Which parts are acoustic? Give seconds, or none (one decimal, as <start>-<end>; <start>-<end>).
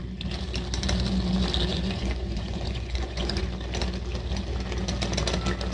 0.0-1.7; 3.4-5.7